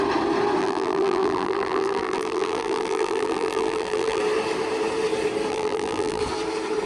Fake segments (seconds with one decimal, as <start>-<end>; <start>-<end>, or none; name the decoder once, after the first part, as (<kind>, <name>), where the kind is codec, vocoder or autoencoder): 0.6-4.2 (vocoder, BigVGAN v2); 5.5-6.2

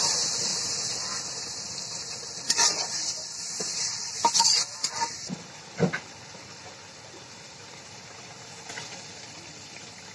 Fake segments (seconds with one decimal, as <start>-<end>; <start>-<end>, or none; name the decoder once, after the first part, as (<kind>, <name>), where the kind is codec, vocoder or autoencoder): 0.0-0.5 (vocoder, BigVGAN v2); 1.5-10.1

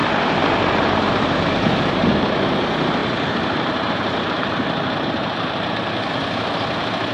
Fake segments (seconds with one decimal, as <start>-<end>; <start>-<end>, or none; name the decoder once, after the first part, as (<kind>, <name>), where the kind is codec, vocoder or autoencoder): 0.0-2.6 (vocoder, BigVGAN v2); 3.0-6.1

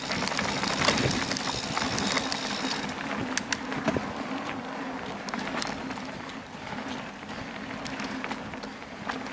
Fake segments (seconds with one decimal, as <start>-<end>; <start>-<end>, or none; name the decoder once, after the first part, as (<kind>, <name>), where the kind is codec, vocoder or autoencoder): none

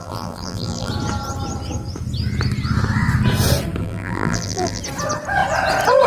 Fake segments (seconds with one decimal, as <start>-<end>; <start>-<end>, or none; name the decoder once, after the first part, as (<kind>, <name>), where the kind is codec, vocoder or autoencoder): 0.0-0.9 (vocoder, BigVGAN v2); 3.8-4.8